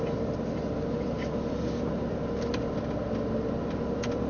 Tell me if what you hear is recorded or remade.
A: recorded